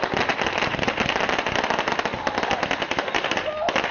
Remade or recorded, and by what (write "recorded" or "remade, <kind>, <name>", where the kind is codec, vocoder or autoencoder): recorded